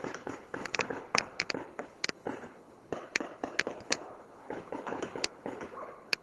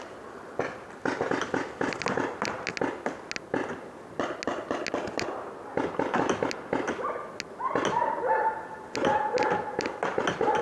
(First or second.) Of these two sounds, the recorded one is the second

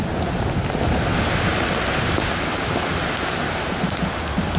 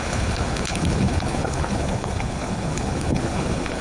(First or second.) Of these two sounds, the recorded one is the first